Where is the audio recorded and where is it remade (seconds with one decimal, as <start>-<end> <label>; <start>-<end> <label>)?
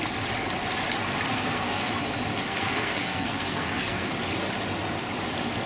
0.0-1.3 recorded; 1.3-1.9 remade; 1.9-2.3 recorded; 2.3-4.1 remade; 4.1-5.7 recorded